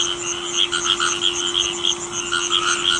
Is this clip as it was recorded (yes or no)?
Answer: yes